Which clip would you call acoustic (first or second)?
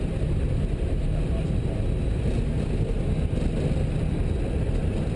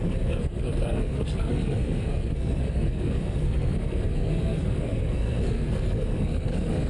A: first